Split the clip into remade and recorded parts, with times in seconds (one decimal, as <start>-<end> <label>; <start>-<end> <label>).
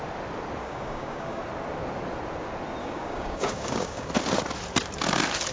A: 0.0-0.6 recorded; 0.6-1.4 remade; 1.4-2.8 recorded; 2.8-4.1 remade; 4.1-5.5 recorded